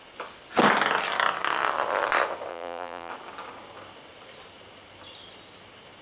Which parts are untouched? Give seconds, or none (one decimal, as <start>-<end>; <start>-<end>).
0.0-2.5; 3.1-6.0